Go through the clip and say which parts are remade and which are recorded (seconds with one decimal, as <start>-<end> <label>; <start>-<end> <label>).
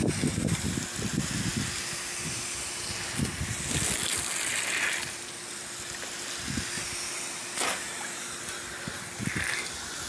0.0-10.1 recorded